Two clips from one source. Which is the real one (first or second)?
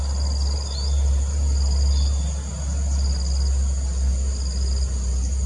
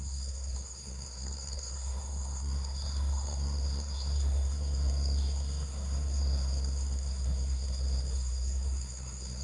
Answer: first